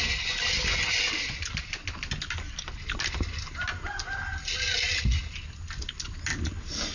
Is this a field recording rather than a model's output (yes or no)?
yes